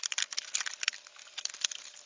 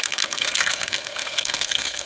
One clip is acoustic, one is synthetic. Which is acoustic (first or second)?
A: first